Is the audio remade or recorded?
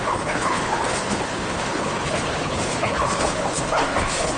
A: remade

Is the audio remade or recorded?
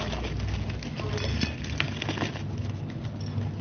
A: recorded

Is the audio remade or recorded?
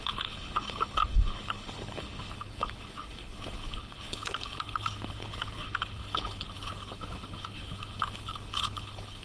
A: remade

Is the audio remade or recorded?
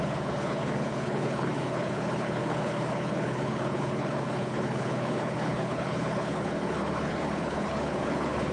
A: remade